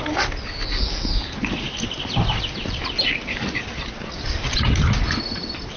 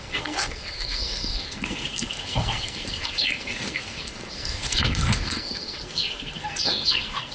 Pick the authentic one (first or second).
first